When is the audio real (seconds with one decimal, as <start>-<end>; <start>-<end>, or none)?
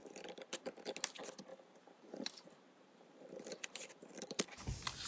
0.7-1.5; 4.4-5.1